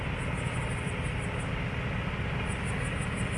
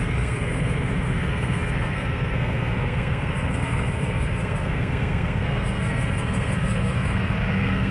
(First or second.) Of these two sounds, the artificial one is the second